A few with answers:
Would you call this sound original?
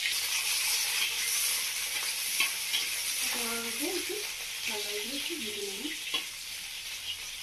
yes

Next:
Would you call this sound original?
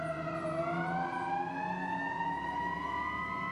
yes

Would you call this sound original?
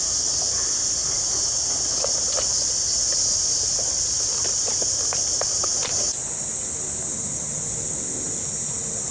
yes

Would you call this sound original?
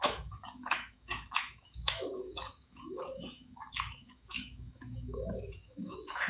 no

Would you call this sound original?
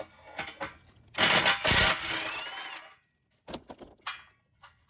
yes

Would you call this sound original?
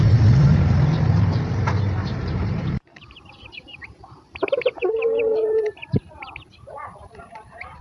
no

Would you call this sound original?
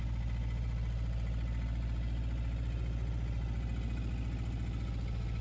yes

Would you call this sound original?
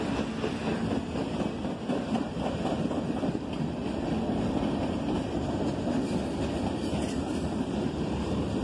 yes